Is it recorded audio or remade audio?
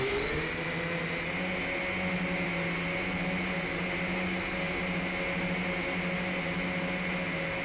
recorded